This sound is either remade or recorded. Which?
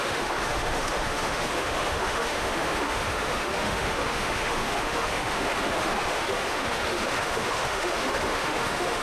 remade